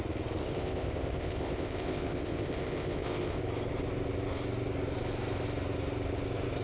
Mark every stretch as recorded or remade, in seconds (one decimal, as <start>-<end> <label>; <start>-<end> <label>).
0.0-0.4 recorded; 0.4-3.4 remade; 3.4-6.6 recorded